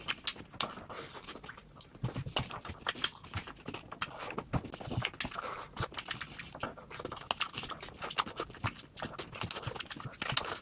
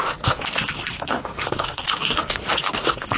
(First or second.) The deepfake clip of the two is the second